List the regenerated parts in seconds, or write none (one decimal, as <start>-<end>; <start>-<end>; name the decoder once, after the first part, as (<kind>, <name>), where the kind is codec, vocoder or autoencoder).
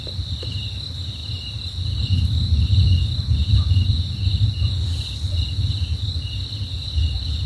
none